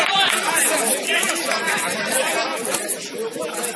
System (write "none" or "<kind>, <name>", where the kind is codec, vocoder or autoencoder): none